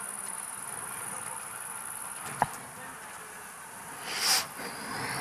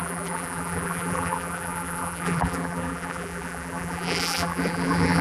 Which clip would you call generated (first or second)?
second